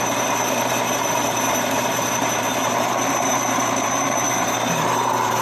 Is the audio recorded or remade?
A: remade